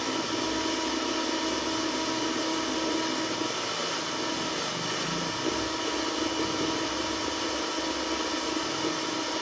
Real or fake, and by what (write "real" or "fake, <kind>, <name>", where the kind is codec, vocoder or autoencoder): real